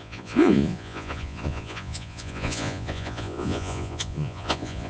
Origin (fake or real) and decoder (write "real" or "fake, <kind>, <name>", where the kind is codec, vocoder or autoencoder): fake, vocoder, Vocos